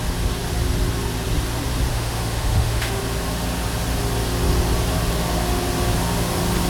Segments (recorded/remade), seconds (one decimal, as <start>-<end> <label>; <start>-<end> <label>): 0.0-1.9 recorded; 1.9-3.0 remade; 3.0-6.7 recorded